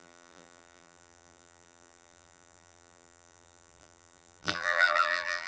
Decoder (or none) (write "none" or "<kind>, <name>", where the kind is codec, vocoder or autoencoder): vocoder, BigVGAN v2